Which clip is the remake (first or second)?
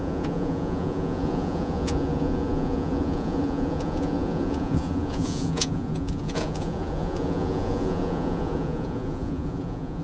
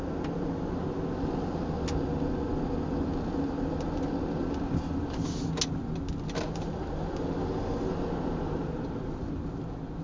first